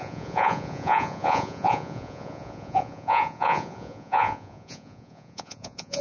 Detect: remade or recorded remade